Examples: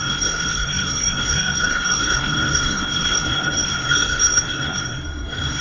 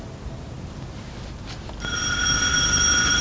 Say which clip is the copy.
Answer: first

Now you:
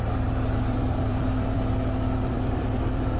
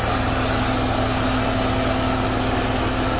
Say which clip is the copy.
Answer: first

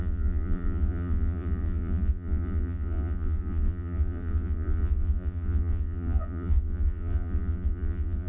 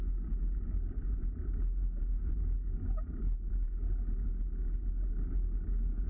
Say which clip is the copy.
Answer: first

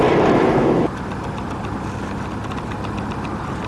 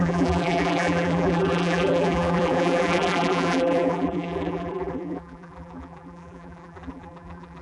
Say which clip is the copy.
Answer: second